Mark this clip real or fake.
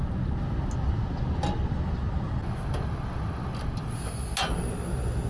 real